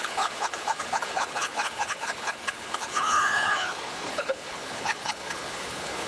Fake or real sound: fake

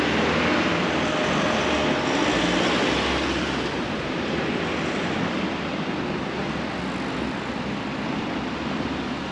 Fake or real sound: real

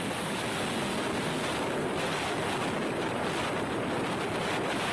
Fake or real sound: real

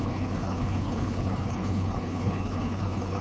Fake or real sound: fake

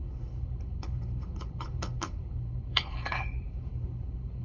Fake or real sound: fake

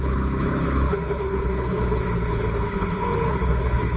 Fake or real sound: fake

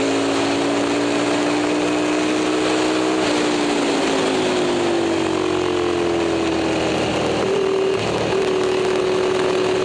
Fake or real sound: real